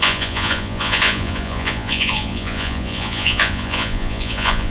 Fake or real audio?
fake